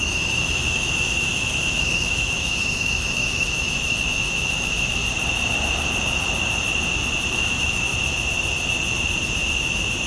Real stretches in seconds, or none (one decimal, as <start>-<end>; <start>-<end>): 5.0-7.3; 7.9-10.1